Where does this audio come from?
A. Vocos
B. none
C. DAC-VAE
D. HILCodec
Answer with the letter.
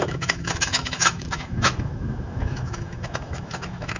C